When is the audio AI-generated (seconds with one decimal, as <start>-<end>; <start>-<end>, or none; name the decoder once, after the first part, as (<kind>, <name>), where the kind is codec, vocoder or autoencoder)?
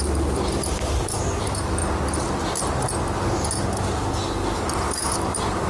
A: 0.0-1.8 (vocoder, BigVGAN v2); 4.7-5.7